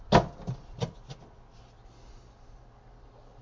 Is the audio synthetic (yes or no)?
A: no